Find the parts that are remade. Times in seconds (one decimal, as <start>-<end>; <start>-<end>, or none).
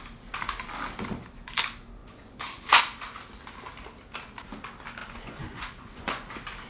2.0-2.8; 5.0-6.3